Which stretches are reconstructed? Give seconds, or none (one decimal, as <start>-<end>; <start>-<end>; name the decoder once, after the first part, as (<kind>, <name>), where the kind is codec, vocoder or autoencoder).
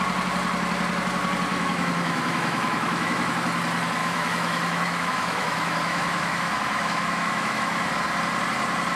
1.5-3.3 (autoencoder, DAC-VAE); 4.0-7.9